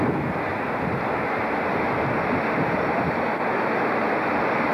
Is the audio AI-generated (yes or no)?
no